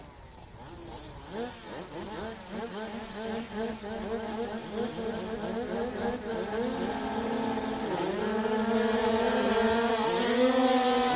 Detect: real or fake real